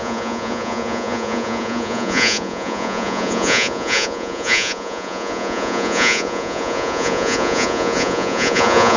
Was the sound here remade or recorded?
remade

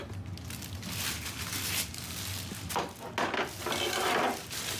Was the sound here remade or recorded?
recorded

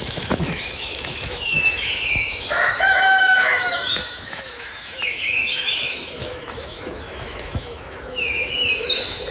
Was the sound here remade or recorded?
remade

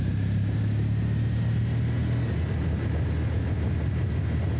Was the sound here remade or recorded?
recorded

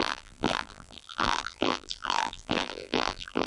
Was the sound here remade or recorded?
remade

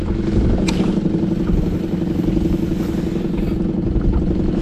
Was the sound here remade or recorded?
recorded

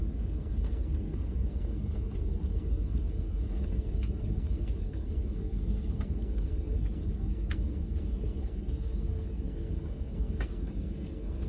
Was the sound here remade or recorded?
remade